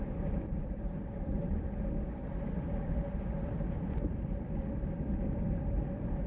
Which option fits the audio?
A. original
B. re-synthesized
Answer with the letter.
B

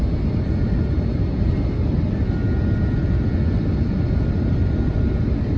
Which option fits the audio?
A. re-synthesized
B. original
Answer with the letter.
B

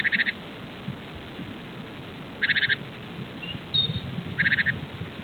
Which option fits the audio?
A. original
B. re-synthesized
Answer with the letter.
A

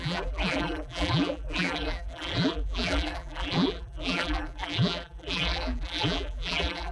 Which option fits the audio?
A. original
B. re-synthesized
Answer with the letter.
B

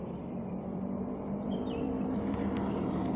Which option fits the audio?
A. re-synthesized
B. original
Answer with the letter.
A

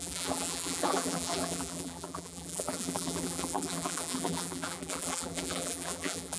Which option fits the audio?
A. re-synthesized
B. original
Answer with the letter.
A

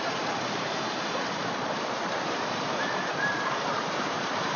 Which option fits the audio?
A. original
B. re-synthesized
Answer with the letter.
B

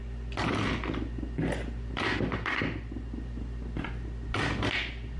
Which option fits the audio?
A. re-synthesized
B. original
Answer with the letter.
B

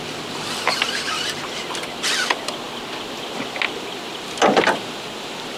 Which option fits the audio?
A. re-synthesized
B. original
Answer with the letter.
B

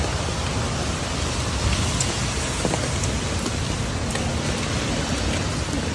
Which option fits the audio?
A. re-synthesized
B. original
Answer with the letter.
B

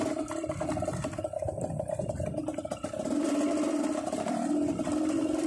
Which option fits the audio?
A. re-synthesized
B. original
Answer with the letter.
A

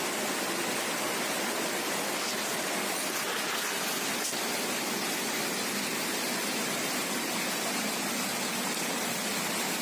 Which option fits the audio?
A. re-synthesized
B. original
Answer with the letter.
B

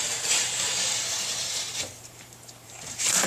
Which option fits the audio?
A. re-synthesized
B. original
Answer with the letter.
A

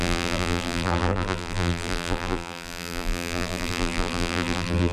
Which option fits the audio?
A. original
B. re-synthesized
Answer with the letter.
B